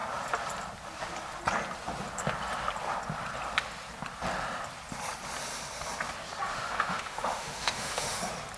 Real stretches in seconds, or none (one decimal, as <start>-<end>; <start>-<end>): 0.0-6.5; 8.2-8.6